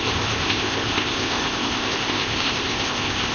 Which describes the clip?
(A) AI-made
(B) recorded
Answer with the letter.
A